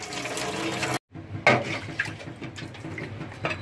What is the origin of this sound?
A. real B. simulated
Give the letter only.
A